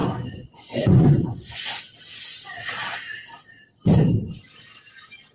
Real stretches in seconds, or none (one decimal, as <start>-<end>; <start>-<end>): 1.8-5.3